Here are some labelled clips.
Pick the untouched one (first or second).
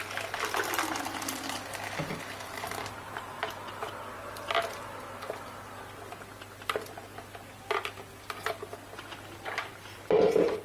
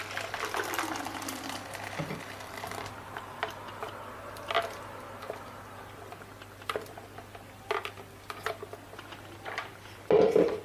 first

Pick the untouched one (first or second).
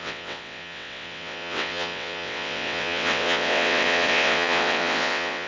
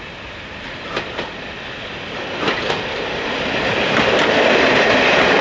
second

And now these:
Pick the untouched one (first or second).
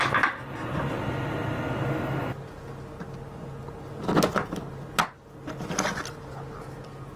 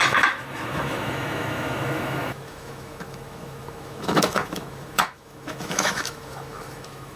first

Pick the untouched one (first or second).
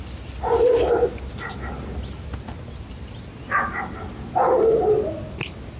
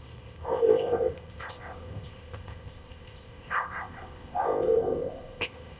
first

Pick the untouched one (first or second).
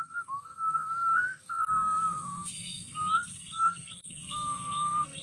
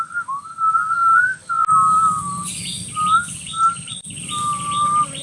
second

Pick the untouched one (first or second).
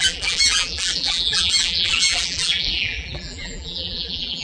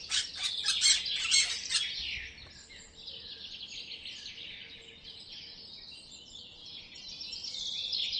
second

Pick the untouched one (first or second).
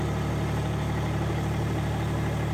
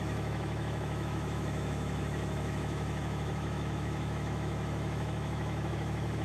first